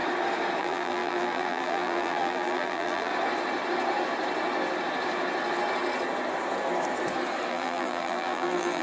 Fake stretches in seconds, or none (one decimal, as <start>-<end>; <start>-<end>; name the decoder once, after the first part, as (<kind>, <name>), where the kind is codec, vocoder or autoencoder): 0.6-3.1 (vocoder, BigVGAN v2); 7.5-8.8